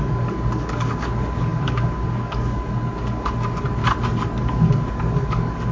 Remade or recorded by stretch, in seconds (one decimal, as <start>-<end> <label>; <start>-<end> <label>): 0.0-3.8 remade; 3.8-4.4 recorded; 4.4-5.7 remade